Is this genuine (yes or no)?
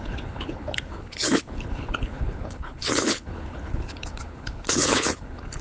no